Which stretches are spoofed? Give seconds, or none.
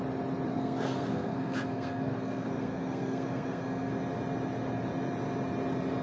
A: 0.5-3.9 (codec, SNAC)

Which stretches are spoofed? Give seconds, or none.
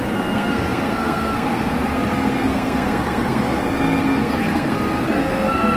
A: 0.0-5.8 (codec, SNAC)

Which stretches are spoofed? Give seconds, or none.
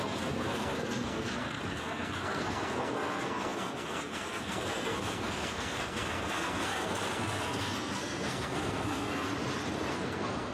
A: 0.0-9.3 (codec, SNAC); 9.9-10.5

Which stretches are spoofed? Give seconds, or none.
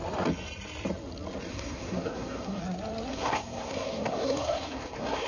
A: 1.5-2.6 (codec, SNAC); 3.1-5.3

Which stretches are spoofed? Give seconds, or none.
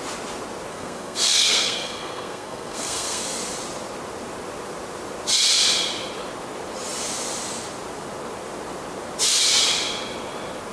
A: 0.7-3.2 (codec, SNAC)